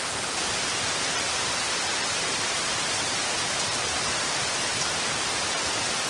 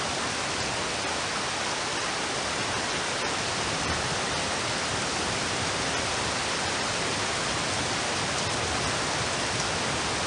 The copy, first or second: first